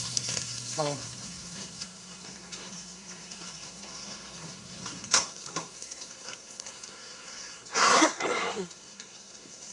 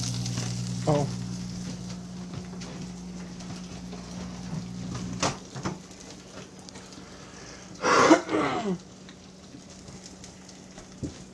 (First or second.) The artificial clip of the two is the first